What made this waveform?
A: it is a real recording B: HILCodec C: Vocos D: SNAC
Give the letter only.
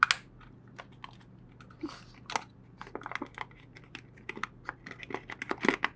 A